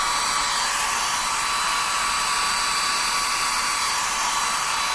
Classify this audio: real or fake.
real